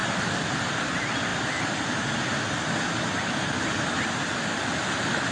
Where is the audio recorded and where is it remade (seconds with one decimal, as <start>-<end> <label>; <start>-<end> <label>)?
0.0-5.3 recorded